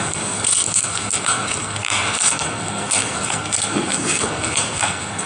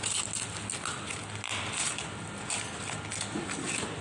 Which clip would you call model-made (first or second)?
first